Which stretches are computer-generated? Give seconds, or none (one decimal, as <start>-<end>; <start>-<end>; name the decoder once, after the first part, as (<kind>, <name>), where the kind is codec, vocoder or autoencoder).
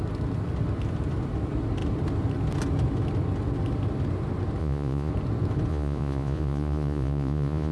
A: 4.6-5.1 (vocoder, Vocos); 5.7-7.7